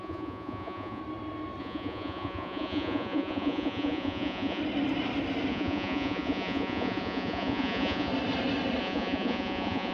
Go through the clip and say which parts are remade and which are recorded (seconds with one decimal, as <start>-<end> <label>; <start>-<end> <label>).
0.0-1.0 remade; 1.0-1.6 recorded; 1.6-4.6 remade; 4.6-5.5 recorded; 5.5-8.1 remade; 8.1-8.8 recorded; 8.8-9.9 remade